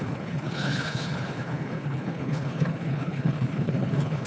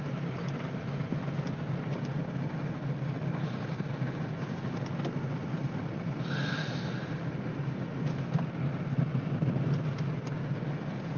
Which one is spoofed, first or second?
first